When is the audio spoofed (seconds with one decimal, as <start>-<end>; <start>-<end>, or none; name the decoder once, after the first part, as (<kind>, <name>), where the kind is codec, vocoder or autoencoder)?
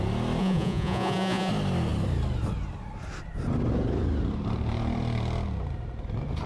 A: 0.4-1.5 (vocoder, Vocos)